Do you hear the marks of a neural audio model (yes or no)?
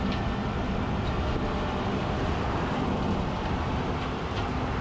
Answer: no